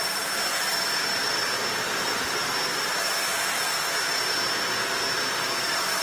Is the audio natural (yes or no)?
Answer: yes